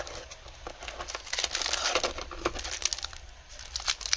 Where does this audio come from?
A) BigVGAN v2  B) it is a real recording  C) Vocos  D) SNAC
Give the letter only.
B